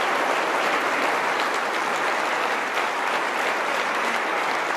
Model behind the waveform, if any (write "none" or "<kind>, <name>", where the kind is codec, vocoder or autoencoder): none